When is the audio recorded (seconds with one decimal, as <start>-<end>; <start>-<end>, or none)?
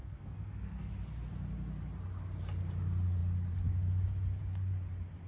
0.9-5.3